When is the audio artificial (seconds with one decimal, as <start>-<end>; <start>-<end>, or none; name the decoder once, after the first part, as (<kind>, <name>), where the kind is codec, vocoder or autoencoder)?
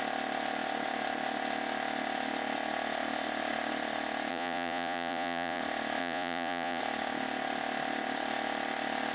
4.3-5.6 (vocoder, Vocos); 6.0-6.8